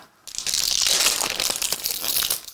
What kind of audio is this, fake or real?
real